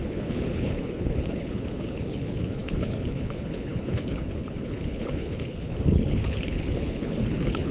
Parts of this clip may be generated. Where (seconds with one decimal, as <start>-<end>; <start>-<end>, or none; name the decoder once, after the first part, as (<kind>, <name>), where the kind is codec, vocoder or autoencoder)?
0.0-7.7 (codec, HILCodec)